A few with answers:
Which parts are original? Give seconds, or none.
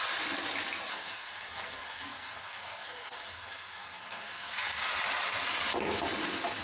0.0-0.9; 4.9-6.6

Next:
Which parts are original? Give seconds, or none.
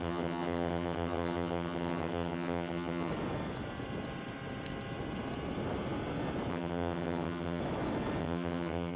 3.1-6.5; 7.6-8.2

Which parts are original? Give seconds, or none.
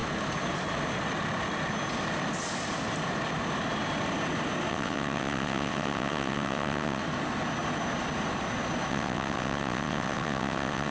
0.0-4.7; 7.0-8.9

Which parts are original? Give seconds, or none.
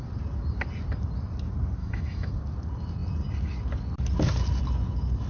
0.0-1.8; 2.3-5.3